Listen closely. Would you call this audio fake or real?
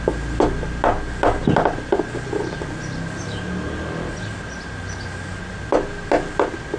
real